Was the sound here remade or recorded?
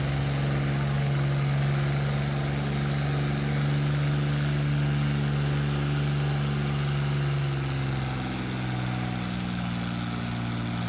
recorded